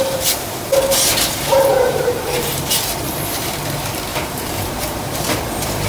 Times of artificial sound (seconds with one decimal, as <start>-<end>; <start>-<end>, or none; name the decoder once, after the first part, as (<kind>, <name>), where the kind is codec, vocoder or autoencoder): 1.7-2.6 (vocoder, BigVGAN v2); 4.1-5.9